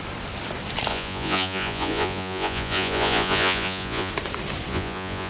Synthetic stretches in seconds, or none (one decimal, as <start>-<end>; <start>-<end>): 0.9-4.1; 4.7-5.3